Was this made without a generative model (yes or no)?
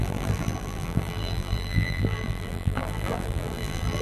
no